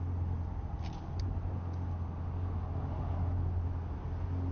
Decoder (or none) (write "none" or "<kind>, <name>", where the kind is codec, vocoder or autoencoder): none